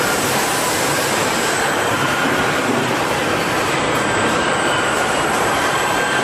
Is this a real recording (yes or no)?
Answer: no